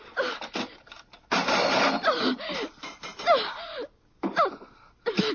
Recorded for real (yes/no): yes